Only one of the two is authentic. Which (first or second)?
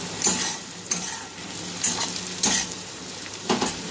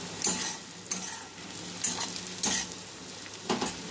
second